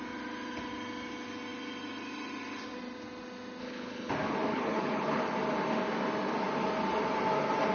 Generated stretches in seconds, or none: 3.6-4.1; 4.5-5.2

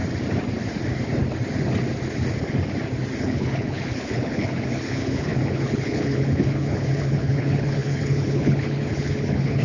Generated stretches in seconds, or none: 3.2-9.6

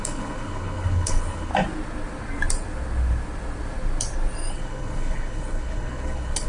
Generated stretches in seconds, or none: 0.0-1.5; 4.5-6.5